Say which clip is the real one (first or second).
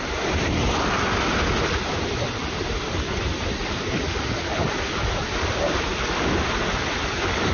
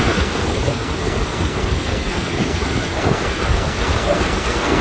first